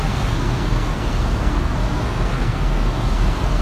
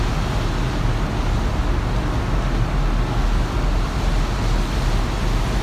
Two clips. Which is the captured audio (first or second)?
second